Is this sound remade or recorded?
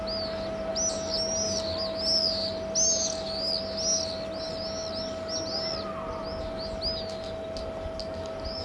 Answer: recorded